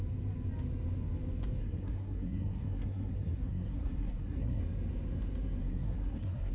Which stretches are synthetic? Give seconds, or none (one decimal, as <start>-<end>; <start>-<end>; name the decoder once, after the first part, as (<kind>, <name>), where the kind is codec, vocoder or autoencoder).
1.6-4.6 (codec, SNAC); 5.6-6.5